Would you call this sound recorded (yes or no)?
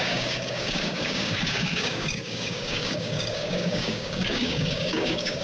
no